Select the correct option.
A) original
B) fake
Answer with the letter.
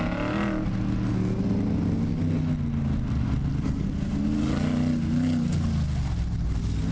A